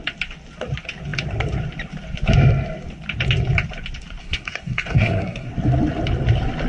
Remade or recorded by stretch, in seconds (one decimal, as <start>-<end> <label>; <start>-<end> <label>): 0.0-4.2 recorded; 4.2-5.5 remade; 5.5-6.7 recorded